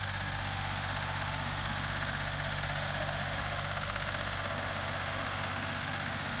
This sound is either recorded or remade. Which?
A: remade